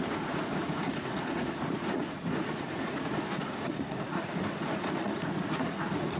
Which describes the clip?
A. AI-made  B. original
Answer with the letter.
A